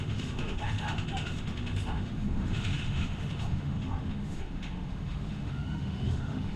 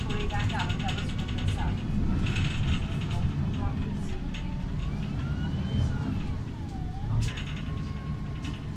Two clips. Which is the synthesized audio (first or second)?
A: first